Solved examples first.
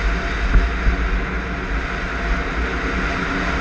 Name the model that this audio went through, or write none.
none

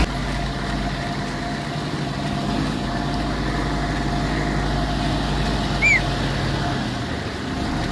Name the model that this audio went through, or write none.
none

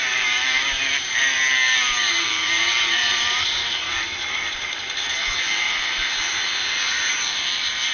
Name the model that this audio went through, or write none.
vocoder, BigVGAN v2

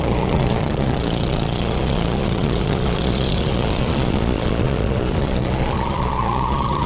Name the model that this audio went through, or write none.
vocoder, Vocos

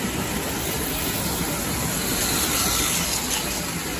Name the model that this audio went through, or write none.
none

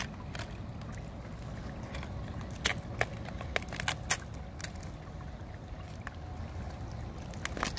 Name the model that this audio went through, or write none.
none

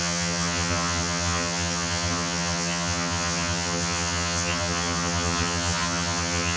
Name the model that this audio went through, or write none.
vocoder, HiFi-GAN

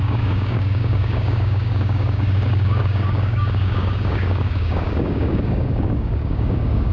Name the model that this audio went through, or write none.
codec, DAC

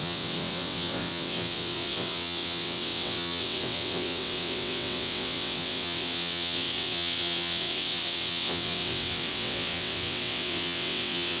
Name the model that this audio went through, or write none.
vocoder, WaveNeXt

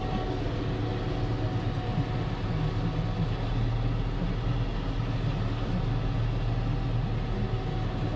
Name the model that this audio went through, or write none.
none